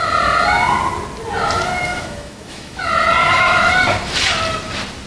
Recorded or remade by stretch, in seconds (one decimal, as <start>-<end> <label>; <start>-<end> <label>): 0.0-1.9 recorded; 1.9-2.8 remade; 2.8-3.2 recorded; 3.2-3.7 remade; 3.7-5.1 recorded